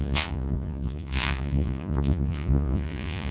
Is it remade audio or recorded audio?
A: remade